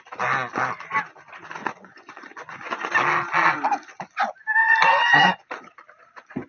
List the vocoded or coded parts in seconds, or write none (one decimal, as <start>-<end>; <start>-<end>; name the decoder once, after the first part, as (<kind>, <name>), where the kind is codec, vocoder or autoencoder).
1.6-2.9 (vocoder, Vocos); 4.6-5.5